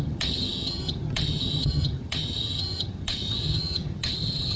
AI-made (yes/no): yes